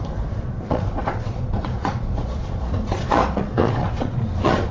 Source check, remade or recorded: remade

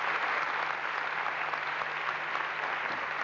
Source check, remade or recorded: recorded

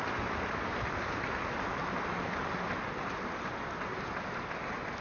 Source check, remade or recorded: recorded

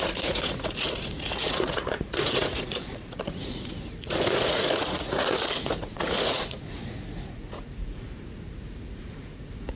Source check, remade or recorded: remade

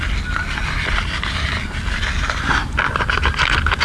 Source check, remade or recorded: recorded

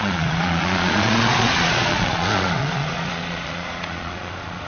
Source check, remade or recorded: remade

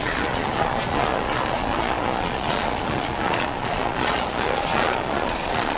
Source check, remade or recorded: remade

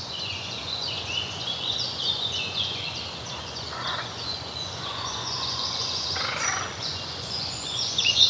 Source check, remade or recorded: remade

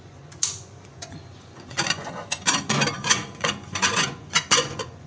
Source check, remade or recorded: remade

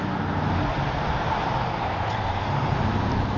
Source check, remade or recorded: recorded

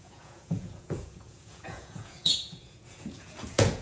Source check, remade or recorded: remade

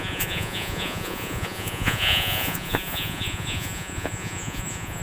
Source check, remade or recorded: remade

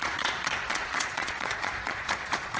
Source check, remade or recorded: remade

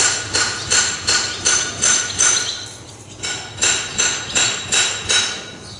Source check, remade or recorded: recorded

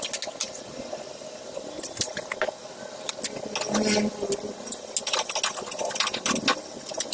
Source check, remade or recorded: recorded